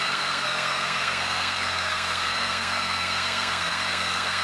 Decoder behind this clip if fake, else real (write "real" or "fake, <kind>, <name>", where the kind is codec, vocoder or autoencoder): fake, codec, SNAC